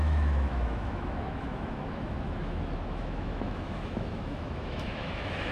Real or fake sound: fake